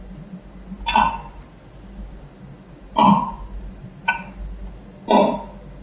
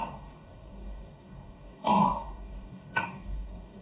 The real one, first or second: first